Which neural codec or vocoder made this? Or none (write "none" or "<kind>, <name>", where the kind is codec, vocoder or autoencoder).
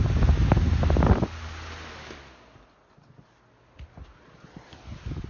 none